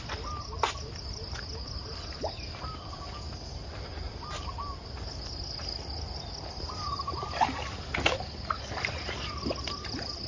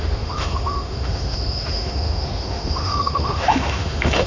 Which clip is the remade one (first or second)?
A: second